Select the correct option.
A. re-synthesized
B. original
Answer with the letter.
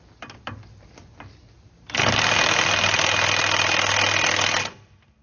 B